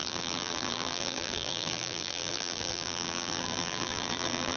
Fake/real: fake